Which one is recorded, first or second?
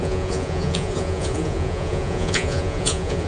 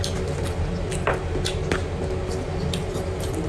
second